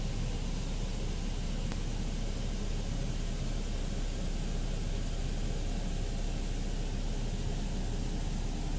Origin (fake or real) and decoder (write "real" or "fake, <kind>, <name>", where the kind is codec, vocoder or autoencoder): real